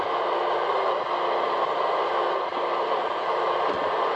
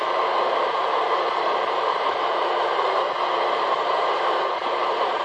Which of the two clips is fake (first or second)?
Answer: second